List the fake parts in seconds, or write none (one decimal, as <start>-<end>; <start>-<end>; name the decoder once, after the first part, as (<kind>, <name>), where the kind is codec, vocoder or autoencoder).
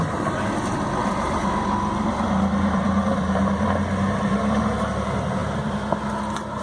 1.0-4.6 (vocoder, BigVGAN v2); 5.4-6.1